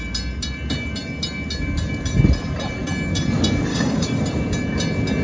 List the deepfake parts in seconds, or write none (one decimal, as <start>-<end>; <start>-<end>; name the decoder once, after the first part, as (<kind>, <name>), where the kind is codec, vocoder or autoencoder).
3.7-4.2 (codec, DAC)